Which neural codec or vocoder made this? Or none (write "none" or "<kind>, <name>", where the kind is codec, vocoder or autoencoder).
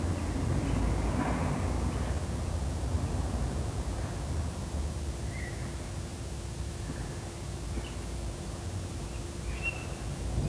none